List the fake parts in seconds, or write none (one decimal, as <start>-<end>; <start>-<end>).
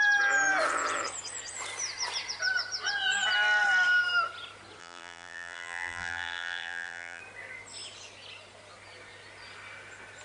4.8-7.2